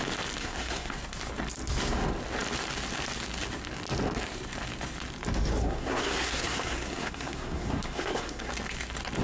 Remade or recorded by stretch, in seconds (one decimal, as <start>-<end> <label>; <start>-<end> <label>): 0.0-0.4 recorded; 0.4-1.0 remade; 1.0-5.6 recorded; 5.6-8.5 remade; 8.5-9.2 recorded